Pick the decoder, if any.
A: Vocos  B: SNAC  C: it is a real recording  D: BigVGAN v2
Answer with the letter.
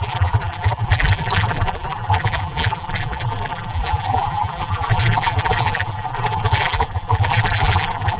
D